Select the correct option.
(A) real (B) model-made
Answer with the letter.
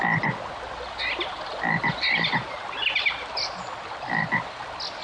A